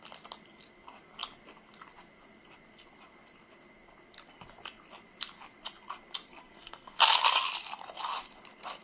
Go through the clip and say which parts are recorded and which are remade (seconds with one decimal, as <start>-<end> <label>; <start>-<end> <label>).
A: 0.0-6.3 recorded; 6.3-7.0 remade; 7.0-8.8 recorded